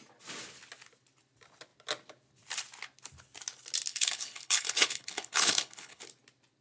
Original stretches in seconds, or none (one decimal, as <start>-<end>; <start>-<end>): 0.0-3.9; 6.0-6.6